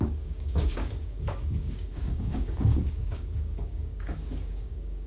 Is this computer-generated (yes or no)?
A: yes